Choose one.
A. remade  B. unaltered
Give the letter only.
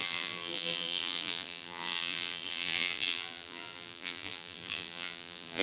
A